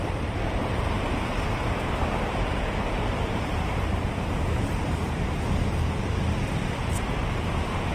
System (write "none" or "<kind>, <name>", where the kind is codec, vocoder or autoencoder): vocoder, BigVGAN v2